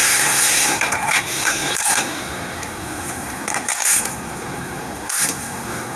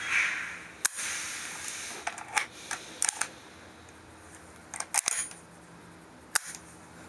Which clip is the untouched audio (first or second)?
second